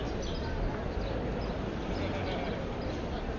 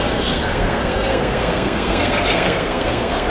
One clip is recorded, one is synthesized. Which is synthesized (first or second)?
second